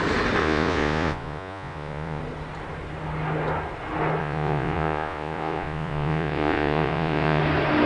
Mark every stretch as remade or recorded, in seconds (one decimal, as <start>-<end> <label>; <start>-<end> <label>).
0.0-0.4 recorded; 0.4-2.2 remade; 2.2-4.2 recorded; 4.2-7.4 remade; 7.4-7.9 recorded